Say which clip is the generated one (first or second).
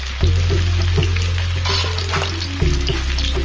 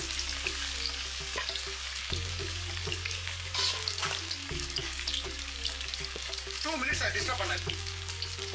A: second